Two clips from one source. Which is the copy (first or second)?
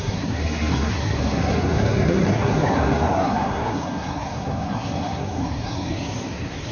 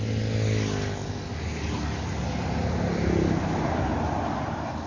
first